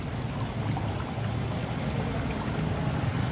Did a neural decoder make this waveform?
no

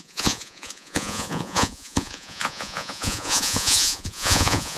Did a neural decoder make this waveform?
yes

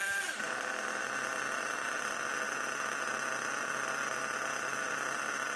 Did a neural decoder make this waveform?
no